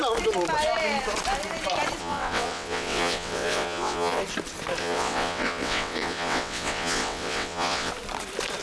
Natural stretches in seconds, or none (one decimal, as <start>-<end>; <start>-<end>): 0.0-2.0; 4.2-4.8; 7.9-8.6